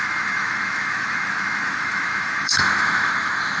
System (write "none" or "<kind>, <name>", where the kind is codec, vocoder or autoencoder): autoencoder, DAC-VAE